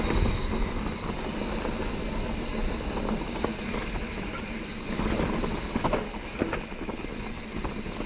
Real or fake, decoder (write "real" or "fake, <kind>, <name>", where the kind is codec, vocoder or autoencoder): real